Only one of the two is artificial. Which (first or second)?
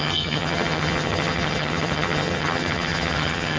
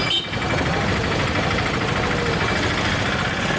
first